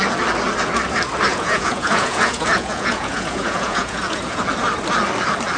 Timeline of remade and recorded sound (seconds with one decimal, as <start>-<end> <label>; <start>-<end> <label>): 0.0-1.3 recorded; 1.3-4.4 remade; 4.4-5.6 recorded